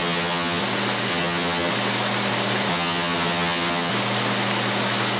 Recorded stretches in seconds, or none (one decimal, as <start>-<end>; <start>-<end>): 0.6-1.1; 1.7-2.7; 3.9-5.2